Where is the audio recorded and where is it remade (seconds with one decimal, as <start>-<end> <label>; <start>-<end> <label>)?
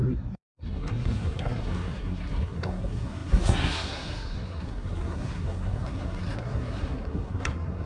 0.0-7.9 remade